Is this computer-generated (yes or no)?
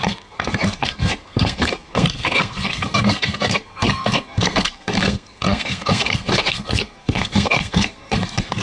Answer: yes